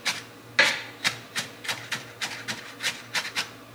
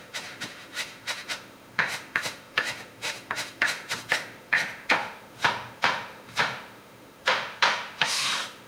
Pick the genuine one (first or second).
first